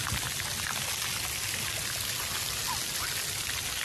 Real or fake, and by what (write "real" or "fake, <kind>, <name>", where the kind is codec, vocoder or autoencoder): real